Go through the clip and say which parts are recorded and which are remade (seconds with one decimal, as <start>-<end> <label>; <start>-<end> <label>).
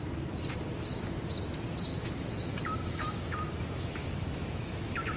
0.0-1.9 recorded; 1.9-5.2 remade